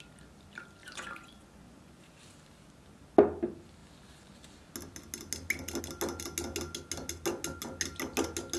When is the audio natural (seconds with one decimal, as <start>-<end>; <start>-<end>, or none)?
0.0-0.8; 2.2-8.6